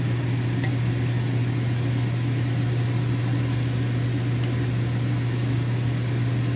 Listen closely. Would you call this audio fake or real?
real